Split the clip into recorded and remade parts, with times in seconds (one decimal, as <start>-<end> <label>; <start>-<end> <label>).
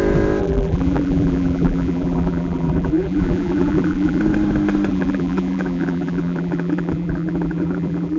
0.0-0.4 recorded; 0.4-4.2 remade; 4.2-4.9 recorded; 4.9-8.2 remade